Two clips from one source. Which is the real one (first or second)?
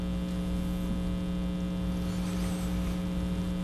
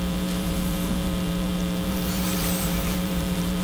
first